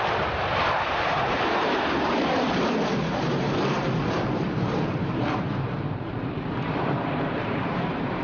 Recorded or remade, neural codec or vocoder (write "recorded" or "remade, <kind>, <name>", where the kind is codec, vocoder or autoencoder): remade, vocoder, BigVGAN v2